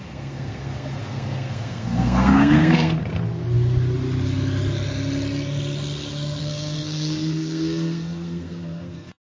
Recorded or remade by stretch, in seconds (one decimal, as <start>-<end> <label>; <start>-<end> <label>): 0.0-3.0 remade; 3.0-6.4 recorded; 6.4-9.4 remade